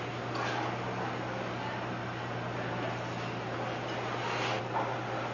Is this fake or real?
real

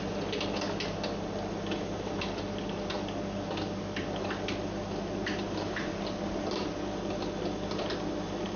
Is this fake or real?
real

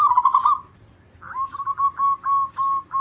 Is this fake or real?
real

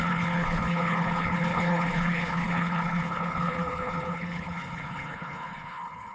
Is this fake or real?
fake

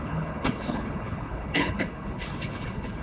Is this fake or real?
fake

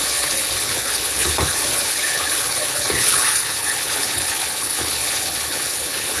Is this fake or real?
fake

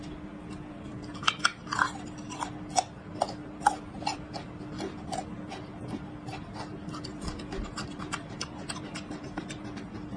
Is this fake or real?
real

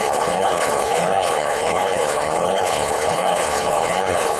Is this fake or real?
fake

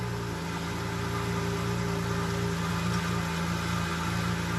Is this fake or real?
real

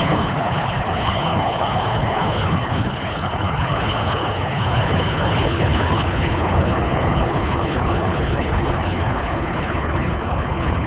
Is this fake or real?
fake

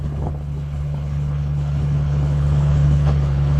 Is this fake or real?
fake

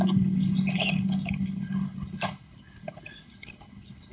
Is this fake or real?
fake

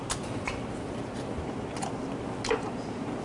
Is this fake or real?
real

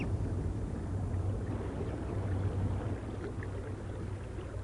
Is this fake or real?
real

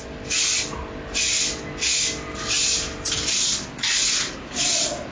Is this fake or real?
real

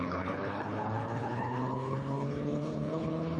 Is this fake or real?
fake